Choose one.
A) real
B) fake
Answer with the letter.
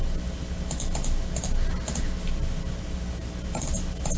A